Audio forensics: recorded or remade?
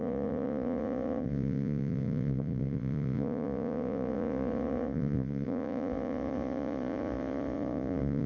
remade